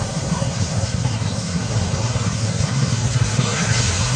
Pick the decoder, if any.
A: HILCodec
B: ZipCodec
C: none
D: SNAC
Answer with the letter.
D